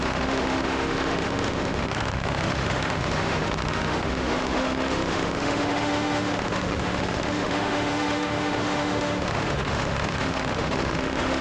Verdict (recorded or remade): remade